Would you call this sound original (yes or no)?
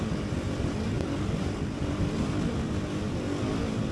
yes